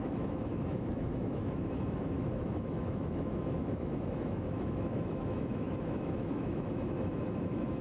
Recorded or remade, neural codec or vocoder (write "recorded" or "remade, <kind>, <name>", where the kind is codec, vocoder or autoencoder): remade, autoencoder, DAC-VAE